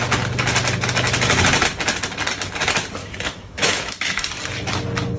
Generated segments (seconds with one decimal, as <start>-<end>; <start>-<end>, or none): 3.0-4.3